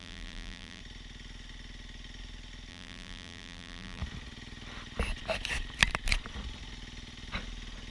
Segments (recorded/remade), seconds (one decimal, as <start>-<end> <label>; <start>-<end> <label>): 0.0-0.8 remade; 0.8-2.7 recorded; 2.7-4.0 remade; 4.0-7.9 recorded